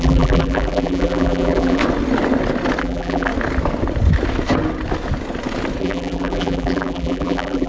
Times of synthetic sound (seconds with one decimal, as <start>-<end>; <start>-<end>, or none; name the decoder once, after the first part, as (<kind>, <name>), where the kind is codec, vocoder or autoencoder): 0.0-1.8 (vocoder, BigVGAN v2); 2.8-3.3; 5.8-7.7